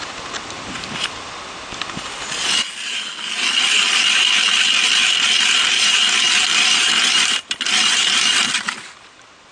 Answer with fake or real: real